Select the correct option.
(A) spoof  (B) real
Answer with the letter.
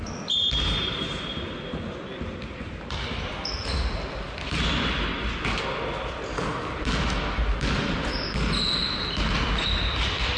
B